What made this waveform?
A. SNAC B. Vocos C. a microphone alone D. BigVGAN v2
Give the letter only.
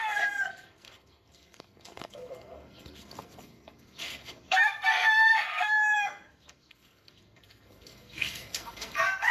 A